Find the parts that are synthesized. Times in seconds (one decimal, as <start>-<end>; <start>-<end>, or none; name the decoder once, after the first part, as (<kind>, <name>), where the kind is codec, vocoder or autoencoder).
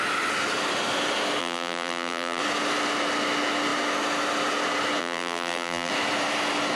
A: 1.4-2.4 (vocoder, BigVGAN v2); 5.0-5.9